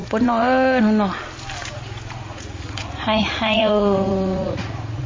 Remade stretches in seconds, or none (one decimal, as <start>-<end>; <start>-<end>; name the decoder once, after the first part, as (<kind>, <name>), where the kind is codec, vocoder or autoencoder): 0.0-0.8 (vocoder, Vocos); 1.6-5.1